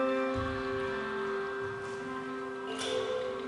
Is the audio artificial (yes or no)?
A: no